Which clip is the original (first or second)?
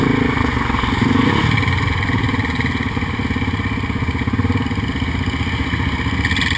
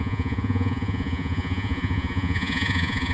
first